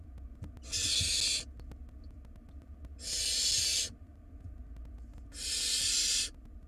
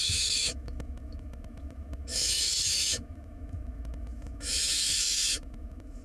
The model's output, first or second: second